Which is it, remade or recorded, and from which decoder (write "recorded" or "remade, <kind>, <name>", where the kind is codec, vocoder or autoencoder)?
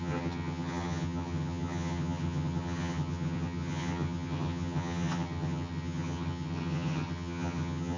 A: remade, vocoder, HiFi-GAN